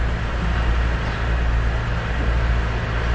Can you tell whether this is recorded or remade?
recorded